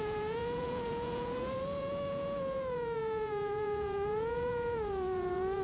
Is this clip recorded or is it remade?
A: remade